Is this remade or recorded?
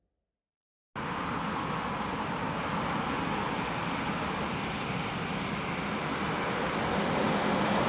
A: recorded